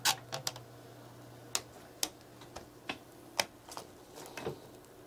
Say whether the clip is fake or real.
real